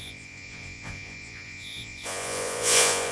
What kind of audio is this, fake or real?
fake